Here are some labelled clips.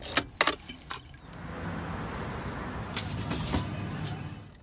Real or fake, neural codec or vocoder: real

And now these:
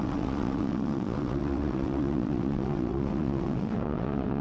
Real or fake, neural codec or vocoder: fake, vocoder, WaveNeXt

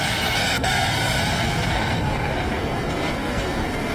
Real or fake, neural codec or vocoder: fake, codec, SNAC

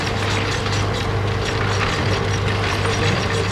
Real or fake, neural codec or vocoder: real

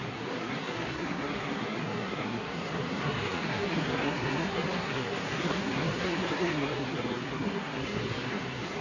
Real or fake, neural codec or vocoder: fake, codec, SNAC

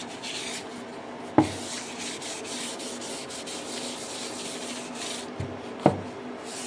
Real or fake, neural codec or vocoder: real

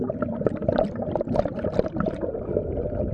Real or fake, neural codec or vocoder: real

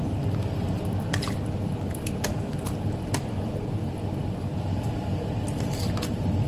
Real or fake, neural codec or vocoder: real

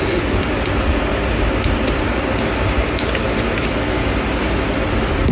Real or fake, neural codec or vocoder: real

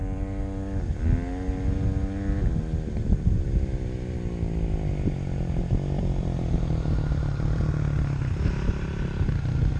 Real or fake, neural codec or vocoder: real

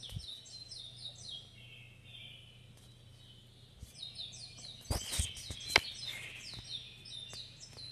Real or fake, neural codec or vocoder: real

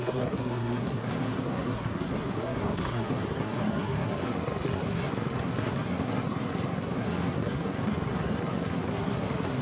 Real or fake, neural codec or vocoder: fake, codec, SNAC